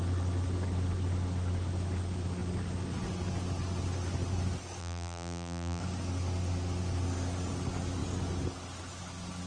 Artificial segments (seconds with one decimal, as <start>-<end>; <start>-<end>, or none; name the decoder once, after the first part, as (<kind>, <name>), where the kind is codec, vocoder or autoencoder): 4.8-5.8 (vocoder, BigVGAN v2)